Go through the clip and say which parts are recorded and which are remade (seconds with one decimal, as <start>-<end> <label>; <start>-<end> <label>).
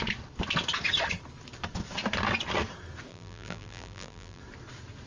0.0-3.1 recorded; 3.1-4.4 remade; 4.4-5.1 recorded